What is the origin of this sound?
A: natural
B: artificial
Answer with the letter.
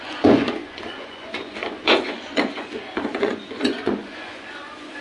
B